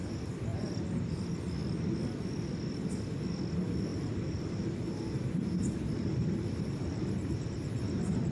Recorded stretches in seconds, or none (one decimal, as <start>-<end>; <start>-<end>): 0.0-3.9; 5.8-7.2; 7.8-8.3